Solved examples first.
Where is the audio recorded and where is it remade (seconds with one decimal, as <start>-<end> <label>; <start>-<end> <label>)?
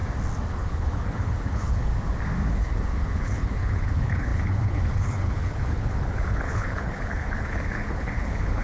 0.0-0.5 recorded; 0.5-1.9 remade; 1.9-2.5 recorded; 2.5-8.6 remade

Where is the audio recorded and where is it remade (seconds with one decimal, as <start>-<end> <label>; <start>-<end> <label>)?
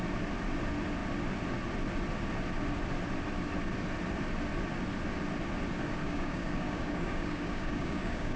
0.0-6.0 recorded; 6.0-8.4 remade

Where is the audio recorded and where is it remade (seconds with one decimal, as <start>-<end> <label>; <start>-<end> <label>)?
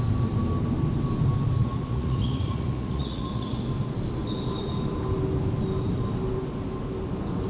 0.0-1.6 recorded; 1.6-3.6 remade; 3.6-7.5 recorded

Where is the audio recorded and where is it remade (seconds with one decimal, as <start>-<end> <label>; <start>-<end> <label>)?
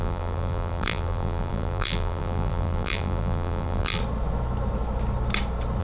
0.0-4.0 remade; 4.0-5.8 recorded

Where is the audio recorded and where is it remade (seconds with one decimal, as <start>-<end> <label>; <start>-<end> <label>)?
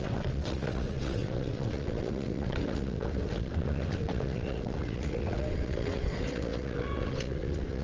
0.0-7.8 remade